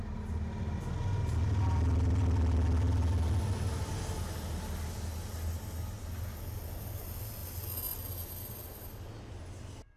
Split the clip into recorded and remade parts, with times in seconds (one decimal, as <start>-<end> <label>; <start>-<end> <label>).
0.0-10.0 recorded